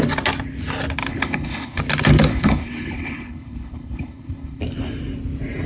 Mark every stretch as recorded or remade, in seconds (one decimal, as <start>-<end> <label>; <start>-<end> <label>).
0.0-1.1 recorded; 1.1-1.8 remade; 1.8-2.3 recorded; 2.3-4.6 remade; 4.6-5.7 recorded